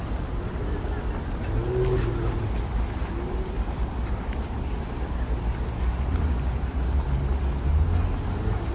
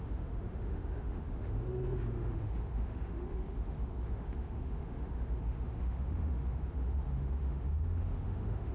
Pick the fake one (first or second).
second